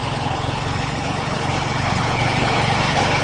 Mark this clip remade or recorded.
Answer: remade